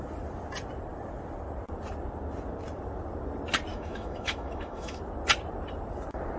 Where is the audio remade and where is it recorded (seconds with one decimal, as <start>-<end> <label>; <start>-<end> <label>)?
0.0-3.7 recorded; 3.7-5.0 remade; 5.0-6.4 recorded